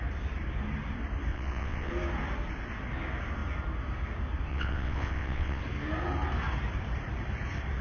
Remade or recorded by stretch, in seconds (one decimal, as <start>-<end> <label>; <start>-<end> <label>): 0.0-1.3 recorded; 1.3-1.9 remade; 1.9-4.5 recorded; 4.5-5.6 remade; 5.6-7.8 recorded